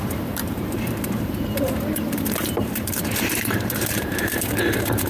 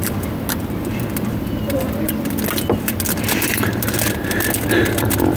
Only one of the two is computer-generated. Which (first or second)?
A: first